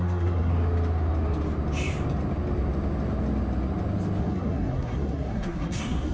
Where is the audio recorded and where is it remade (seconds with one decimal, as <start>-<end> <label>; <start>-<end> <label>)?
0.0-0.5 remade; 0.5-4.2 recorded; 4.2-6.1 remade